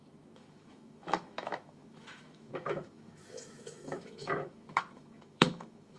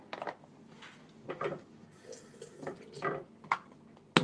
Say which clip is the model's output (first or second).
first